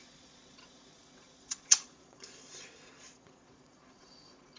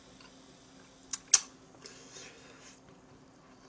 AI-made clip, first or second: first